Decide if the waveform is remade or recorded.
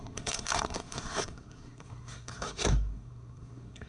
remade